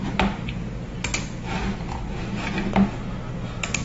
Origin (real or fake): real